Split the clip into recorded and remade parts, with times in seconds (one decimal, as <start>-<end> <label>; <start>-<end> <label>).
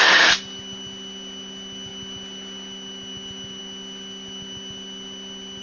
0.0-5.6 recorded